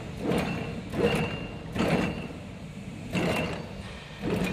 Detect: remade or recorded recorded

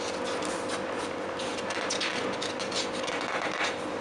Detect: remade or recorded recorded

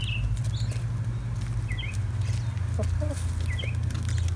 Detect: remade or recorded recorded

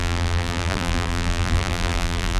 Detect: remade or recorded remade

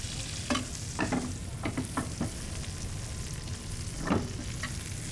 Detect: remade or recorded recorded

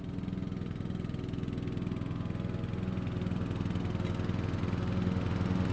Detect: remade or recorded recorded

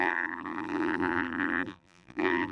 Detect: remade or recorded remade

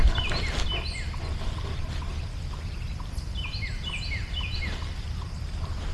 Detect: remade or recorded recorded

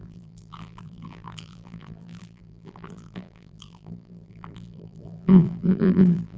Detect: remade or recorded remade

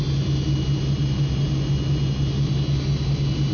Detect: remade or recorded recorded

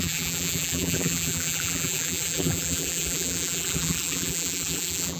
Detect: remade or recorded remade